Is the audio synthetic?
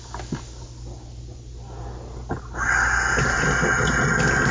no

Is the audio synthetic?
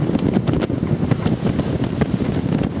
no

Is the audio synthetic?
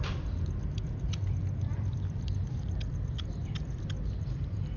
no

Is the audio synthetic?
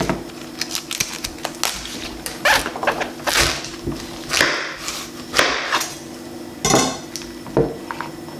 no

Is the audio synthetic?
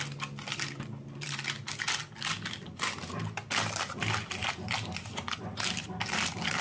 no